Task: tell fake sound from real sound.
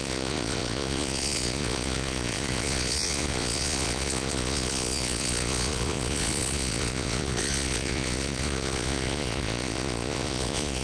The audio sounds fake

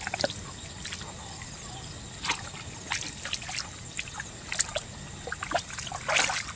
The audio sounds real